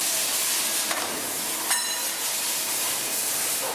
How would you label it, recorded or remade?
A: recorded